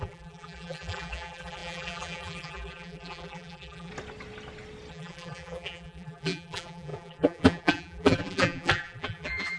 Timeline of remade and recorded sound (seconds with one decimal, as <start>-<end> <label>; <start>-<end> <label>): 0.0-3.9 remade; 3.9-4.9 recorded; 4.9-9.6 remade